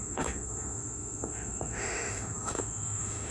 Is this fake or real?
fake